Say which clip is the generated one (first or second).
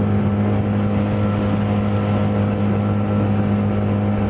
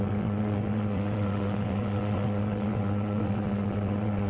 second